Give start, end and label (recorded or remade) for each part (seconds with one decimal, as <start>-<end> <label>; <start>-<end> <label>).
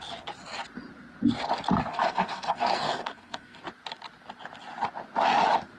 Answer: 0.0-1.9 recorded; 1.9-3.6 remade; 3.6-5.8 recorded